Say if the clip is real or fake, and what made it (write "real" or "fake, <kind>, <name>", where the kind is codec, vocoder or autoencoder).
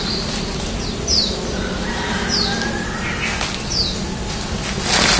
real